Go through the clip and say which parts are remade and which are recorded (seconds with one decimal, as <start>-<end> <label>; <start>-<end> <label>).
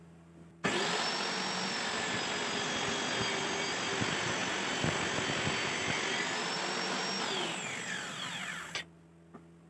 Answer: 0.0-9.7 recorded